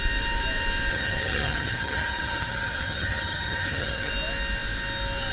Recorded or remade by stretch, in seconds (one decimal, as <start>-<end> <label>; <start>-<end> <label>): 0.0-0.9 recorded; 0.9-4.1 remade; 4.1-5.3 recorded